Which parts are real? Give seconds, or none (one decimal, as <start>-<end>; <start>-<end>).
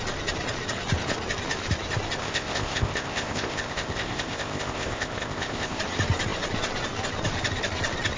0.0-2.2; 5.8-8.2